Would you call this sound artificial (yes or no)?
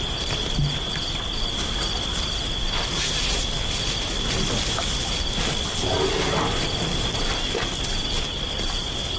no